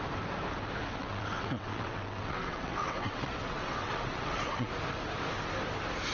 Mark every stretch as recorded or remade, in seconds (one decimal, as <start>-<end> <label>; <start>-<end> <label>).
0.0-1.0 recorded; 1.0-4.7 remade; 4.7-6.1 recorded